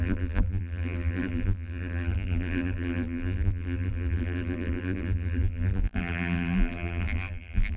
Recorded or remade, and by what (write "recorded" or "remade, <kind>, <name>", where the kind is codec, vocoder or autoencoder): remade, vocoder, BigVGAN v2